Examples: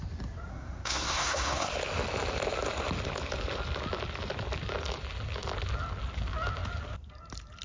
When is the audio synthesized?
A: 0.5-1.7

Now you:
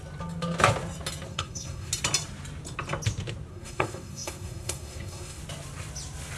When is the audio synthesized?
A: 1.3-1.9; 3.5-5.4

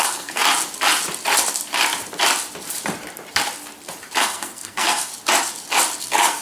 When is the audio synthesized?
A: 0.0-0.4; 4.2-5.1; 6.0-6.4

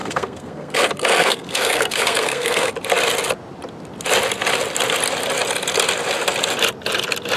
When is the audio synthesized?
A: 0.0-2.7

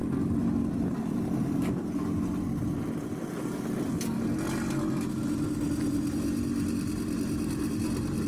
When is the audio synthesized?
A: none

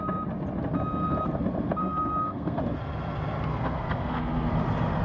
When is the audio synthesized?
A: 1.8-2.6; 3.5-4.5

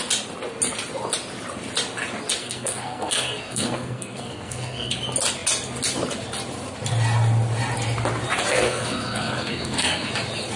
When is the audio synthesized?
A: 2.4-5.0; 8.5-10.1